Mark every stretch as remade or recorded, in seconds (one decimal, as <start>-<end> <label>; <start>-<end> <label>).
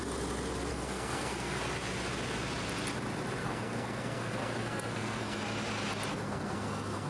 0.0-0.7 recorded; 0.7-1.6 remade; 1.6-3.4 recorded; 3.4-5.4 remade; 5.4-6.1 recorded; 6.1-7.1 remade